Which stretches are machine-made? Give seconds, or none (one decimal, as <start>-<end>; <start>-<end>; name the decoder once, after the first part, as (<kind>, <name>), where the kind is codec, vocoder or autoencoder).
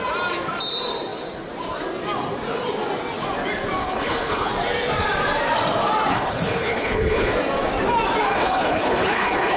3.8-4.5 (codec, HILCodec); 6.1-7.3; 8.3-9.6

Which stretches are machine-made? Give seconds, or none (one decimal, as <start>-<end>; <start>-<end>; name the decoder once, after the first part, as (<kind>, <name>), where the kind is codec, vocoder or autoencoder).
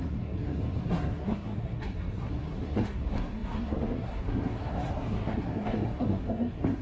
0.0-6.8 (codec, SNAC)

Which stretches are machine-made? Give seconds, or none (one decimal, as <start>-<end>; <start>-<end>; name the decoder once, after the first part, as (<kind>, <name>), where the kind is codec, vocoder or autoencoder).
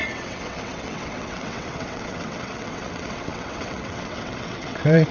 0.0-5.1 (vocoder, WaveNeXt)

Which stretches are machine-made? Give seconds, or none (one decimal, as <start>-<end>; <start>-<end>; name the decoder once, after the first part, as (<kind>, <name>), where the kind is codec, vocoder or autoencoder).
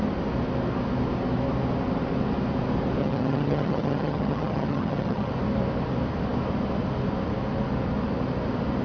3.0-5.3 (vocoder, HiFi-GAN)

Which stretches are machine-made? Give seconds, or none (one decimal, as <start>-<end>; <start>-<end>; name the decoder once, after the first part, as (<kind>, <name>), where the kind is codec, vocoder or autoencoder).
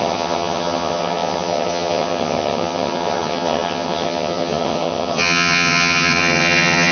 0.0-6.9 (vocoder, HiFi-GAN)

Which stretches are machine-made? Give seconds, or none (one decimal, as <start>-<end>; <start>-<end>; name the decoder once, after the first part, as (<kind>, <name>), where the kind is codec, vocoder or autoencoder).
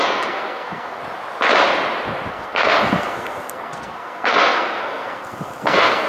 0.0-1.0 (codec, SNAC); 2.3-6.1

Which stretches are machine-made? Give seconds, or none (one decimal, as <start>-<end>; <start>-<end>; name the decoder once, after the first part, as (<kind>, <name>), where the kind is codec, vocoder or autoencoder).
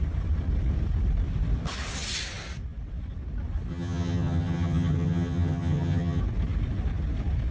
3.7-6.2 (vocoder, HiFi-GAN)